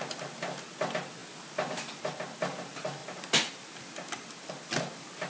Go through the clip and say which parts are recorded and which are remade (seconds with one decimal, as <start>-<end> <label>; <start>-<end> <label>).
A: 0.0-5.3 recorded